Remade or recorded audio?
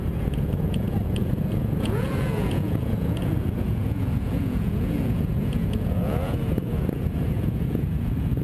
remade